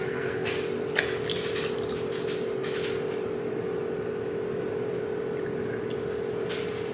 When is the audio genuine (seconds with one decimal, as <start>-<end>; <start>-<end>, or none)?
0.7-6.9